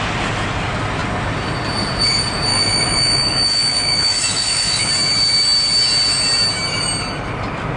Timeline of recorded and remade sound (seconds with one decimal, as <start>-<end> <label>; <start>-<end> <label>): 0.0-2.5 recorded; 2.5-4.9 remade; 4.9-7.8 recorded